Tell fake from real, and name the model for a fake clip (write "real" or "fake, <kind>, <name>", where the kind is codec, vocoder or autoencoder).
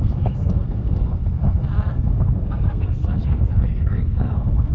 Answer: fake, codec, SNAC